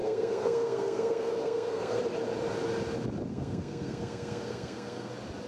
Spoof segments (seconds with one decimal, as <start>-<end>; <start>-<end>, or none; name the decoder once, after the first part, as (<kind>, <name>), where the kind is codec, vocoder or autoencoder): 0.0-2.0 (codec, SNAC); 3.3-5.1